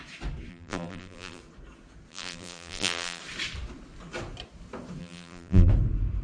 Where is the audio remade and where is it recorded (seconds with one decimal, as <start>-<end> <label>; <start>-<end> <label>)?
0.0-0.5 recorded; 0.5-1.4 remade; 1.4-2.1 recorded; 2.1-3.2 remade; 3.2-5.0 recorded; 5.0-5.7 remade; 5.7-6.2 recorded